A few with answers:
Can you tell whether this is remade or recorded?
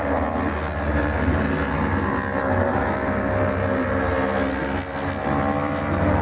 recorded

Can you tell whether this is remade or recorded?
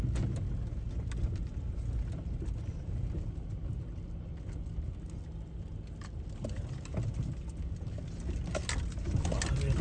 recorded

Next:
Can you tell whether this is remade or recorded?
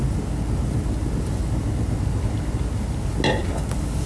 recorded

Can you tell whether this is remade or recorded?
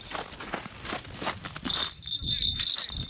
recorded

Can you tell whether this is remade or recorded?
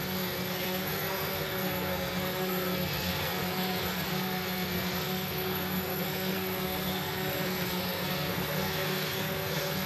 remade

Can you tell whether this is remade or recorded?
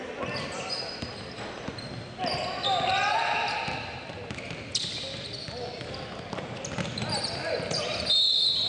recorded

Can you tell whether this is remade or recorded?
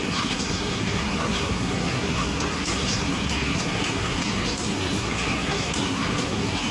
remade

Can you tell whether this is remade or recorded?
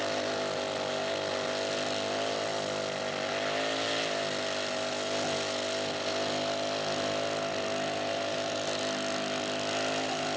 recorded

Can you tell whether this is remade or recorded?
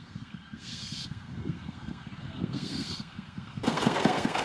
remade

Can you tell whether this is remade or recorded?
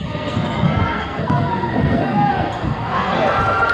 remade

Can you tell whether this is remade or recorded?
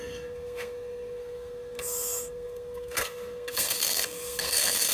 remade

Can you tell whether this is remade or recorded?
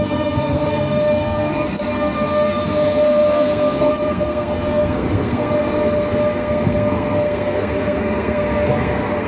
remade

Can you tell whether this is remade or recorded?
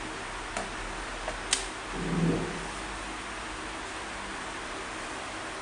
recorded